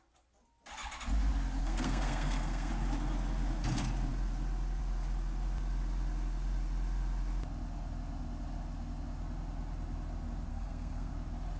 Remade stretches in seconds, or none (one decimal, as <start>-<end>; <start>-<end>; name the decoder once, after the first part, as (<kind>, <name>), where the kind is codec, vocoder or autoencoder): 1.6-2.7 (codec, SNAC); 10.5-11.1